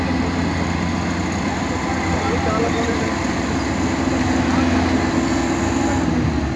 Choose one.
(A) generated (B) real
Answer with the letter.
B